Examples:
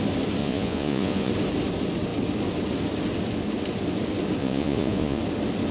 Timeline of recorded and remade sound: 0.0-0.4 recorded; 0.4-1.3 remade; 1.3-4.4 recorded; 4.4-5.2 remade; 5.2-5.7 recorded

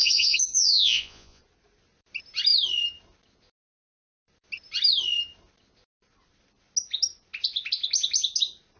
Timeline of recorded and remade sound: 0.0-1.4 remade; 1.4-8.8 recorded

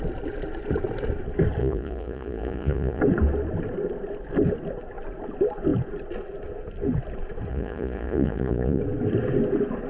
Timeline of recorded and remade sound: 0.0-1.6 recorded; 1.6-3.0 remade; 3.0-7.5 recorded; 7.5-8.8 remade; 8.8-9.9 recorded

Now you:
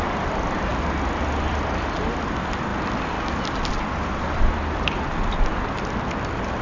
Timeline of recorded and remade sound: 0.0-6.6 recorded

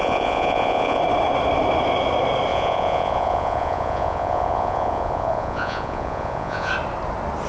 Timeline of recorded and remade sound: 0.0-1.0 remade; 1.0-2.5 recorded; 2.5-6.7 remade; 6.7-7.5 recorded

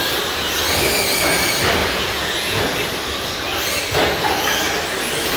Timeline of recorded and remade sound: 0.0-1.8 recorded; 1.8-2.6 remade; 2.6-5.4 recorded